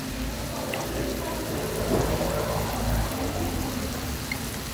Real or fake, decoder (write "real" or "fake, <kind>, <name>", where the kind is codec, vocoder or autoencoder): real